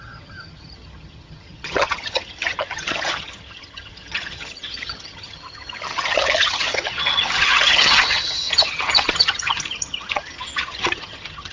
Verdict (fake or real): fake